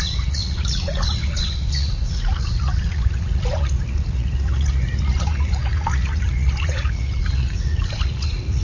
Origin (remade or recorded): remade